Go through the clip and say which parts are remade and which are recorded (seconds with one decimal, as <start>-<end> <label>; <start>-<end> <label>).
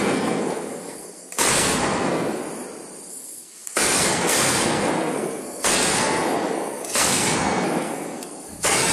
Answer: 0.0-2.4 remade; 2.4-3.1 recorded; 3.1-8.9 remade